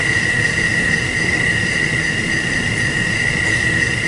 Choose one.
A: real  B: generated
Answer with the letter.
A